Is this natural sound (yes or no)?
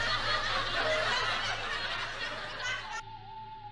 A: yes